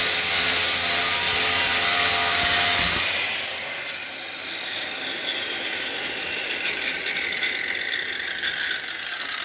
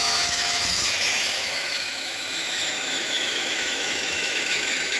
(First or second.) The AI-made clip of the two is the second